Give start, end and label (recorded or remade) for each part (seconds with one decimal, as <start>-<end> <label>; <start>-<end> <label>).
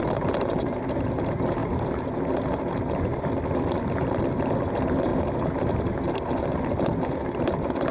0.0-7.9 recorded